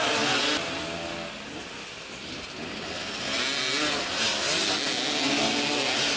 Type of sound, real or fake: real